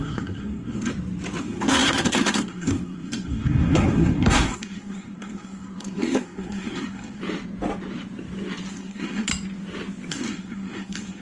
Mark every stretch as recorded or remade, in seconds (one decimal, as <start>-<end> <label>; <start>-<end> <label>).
0.0-0.9 remade; 0.9-1.4 recorded; 1.4-7.2 remade; 7.2-8.7 recorded; 8.7-9.3 remade; 9.3-10.1 recorded; 10.1-11.2 remade